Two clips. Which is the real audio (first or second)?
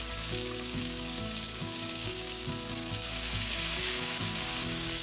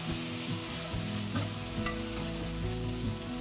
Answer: second